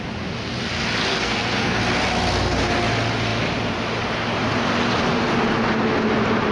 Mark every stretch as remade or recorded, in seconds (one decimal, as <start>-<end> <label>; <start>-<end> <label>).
0.0-1.1 recorded; 1.1-1.8 remade; 1.8-6.5 recorded